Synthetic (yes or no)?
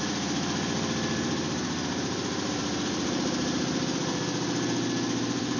yes